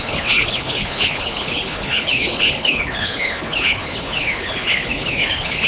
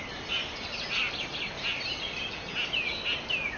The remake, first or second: first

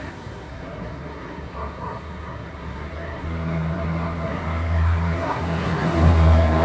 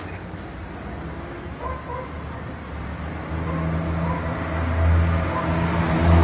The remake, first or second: first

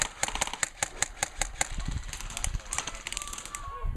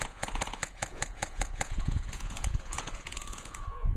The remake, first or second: second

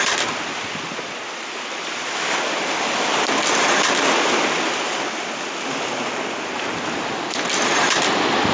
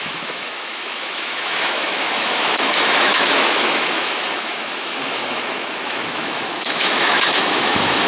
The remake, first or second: second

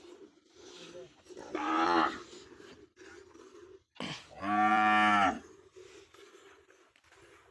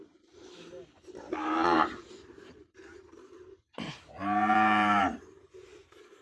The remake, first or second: second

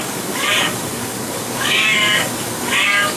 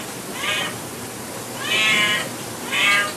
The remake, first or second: first